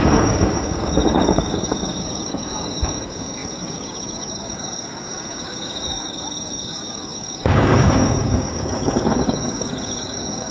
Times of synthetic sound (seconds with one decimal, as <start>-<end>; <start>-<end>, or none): 0.0-10.5